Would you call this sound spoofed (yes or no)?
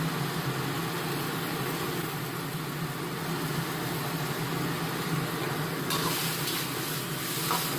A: no